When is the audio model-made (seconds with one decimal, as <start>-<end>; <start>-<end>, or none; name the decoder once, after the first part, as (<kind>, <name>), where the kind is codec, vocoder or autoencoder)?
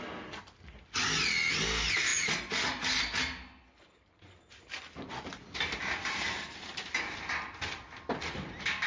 none